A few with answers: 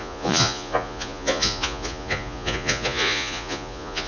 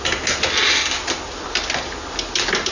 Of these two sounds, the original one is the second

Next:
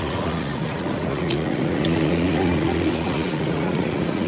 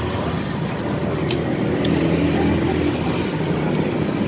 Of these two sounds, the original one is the second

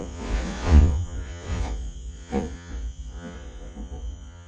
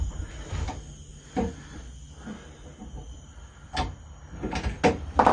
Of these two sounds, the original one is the second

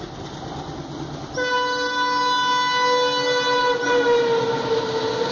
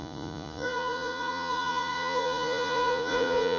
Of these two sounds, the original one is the first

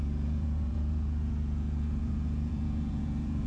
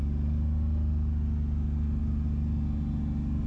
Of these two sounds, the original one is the second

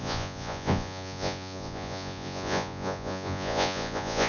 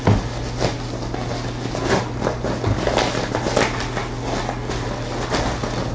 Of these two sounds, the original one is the second